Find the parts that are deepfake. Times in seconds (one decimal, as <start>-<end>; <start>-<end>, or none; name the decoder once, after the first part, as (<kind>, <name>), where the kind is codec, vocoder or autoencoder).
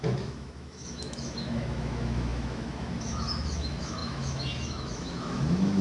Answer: 0.0-5.8 (autoencoder, DAC-VAE)